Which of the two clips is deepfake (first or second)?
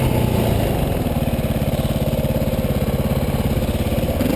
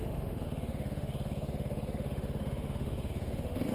second